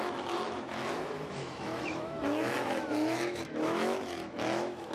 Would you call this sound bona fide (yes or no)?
no